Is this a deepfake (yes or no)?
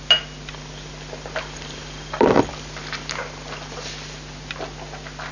no